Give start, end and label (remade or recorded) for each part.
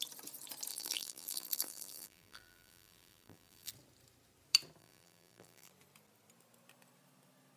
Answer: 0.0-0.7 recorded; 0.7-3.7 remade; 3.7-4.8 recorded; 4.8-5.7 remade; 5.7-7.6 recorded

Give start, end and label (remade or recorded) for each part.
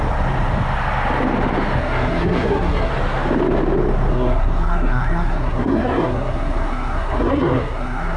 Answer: 0.0-1.8 recorded; 1.8-2.9 remade; 2.9-4.1 recorded; 4.1-8.2 remade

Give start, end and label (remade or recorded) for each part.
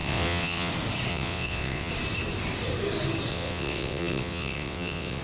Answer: 0.0-0.7 remade; 0.7-1.1 recorded; 1.1-1.9 remade; 1.9-3.3 recorded; 3.3-5.2 remade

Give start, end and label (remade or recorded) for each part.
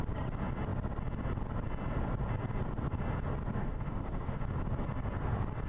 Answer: 0.0-3.6 recorded; 3.6-4.4 remade; 4.4-5.7 recorded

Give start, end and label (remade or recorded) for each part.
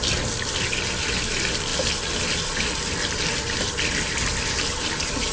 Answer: 0.0-5.3 recorded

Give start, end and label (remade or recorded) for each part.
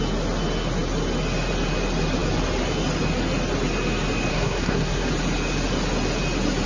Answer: 0.0-4.3 recorded; 4.3-5.1 remade; 5.1-6.7 recorded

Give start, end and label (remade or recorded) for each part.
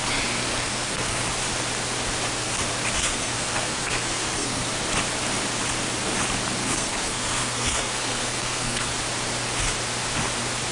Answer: 0.0-0.5 recorded; 0.5-1.2 remade; 1.2-3.0 recorded; 3.0-4.7 remade; 4.7-6.6 recorded; 6.6-8.9 remade; 8.9-10.7 recorded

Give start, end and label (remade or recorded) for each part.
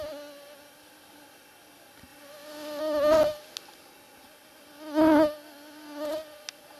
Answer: 0.0-6.8 recorded